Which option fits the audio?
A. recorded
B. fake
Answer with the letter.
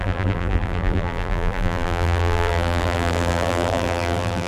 B